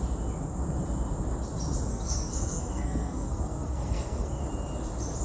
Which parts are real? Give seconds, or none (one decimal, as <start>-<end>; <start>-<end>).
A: 0.0-1.9; 4.4-5.2